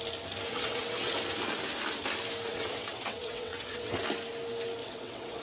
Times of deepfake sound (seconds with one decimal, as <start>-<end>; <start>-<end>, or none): 0.5-1.1; 2.5-4.0; 4.8-5.4